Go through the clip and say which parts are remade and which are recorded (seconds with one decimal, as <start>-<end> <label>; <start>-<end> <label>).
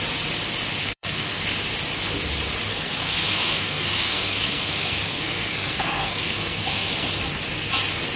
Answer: 0.0-0.8 recorded; 0.8-1.4 remade; 1.4-2.7 recorded; 2.7-7.1 remade; 7.1-8.2 recorded